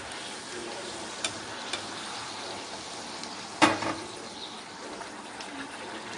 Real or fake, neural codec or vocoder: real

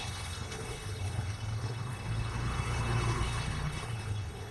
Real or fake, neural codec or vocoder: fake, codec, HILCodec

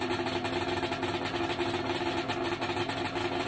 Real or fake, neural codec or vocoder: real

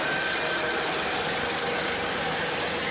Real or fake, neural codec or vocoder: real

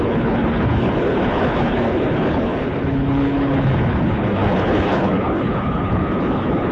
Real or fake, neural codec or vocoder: fake, codec, HILCodec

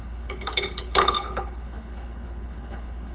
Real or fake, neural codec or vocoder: fake, codec, HILCodec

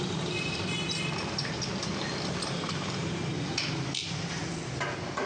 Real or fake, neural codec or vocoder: real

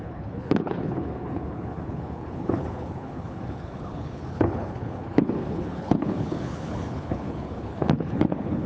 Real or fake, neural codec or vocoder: fake, codec, HILCodec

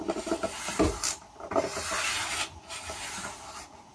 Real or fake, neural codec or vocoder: real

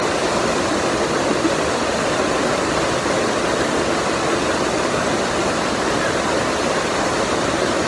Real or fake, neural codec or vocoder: real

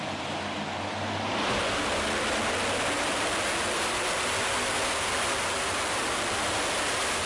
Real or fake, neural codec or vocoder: real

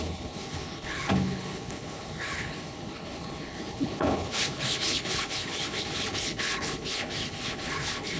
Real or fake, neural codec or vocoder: fake, codec, HILCodec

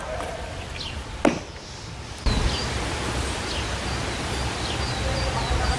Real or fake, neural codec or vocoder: real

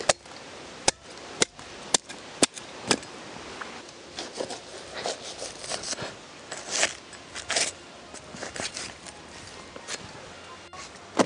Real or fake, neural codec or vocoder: real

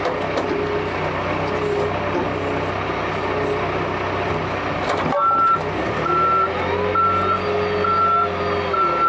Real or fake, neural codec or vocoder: real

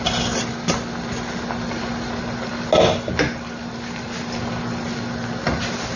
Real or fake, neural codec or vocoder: real